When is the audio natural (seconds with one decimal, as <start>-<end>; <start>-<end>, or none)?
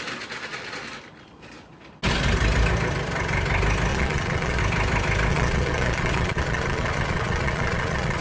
0.0-3.9; 4.6-5.3